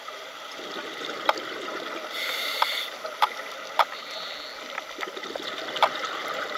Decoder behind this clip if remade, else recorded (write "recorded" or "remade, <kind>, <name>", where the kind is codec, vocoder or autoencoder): recorded